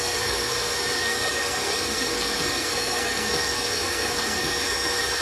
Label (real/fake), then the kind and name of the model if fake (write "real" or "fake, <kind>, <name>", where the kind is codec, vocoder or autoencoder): fake, codec, SNAC